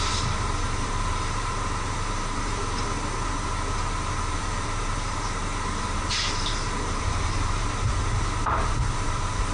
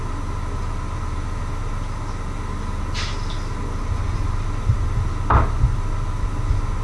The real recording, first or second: second